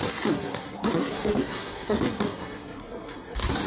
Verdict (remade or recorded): remade